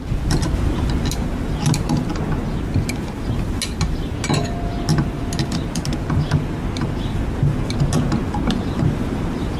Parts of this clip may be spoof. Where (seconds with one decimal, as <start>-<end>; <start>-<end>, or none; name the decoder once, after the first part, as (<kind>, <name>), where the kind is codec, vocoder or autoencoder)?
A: none